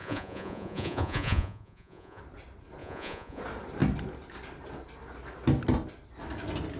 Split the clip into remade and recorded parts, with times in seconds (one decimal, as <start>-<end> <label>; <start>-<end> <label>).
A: 0.0-2.2 remade; 2.2-2.8 recorded; 2.8-3.4 remade; 3.4-6.8 recorded